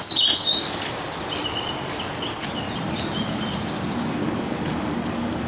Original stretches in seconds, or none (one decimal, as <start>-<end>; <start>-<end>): 0.0-0.4; 0.9-4.2